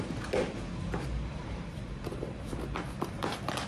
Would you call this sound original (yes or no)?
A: no